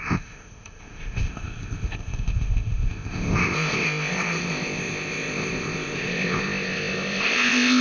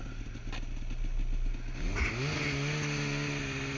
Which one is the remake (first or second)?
first